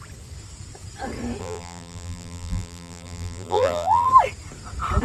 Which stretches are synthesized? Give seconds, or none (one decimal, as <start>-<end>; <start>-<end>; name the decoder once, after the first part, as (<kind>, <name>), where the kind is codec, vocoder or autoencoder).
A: 1.4-4.1 (vocoder, BigVGAN v2)